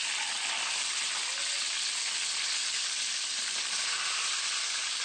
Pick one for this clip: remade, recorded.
recorded